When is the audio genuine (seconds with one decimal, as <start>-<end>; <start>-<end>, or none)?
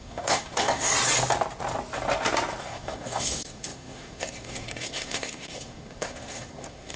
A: 0.9-2.6